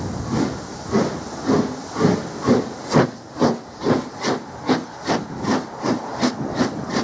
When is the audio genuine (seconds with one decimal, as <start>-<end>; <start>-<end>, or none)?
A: 0.0-7.0